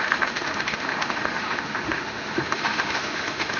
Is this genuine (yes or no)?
no